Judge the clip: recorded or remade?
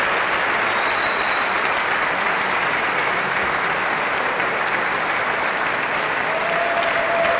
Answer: recorded